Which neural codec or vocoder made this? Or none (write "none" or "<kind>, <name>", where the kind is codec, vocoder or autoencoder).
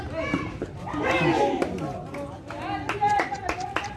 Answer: none